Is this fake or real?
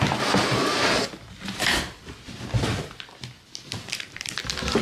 real